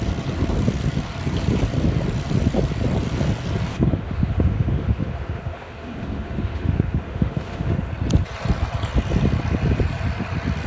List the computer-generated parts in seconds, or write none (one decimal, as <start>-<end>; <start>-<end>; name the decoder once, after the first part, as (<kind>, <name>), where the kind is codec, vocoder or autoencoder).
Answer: 3.7-7.9 (autoencoder, DAC-VAE)